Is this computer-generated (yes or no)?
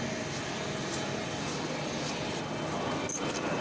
no